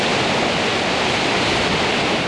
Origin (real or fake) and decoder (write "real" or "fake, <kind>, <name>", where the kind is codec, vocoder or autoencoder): real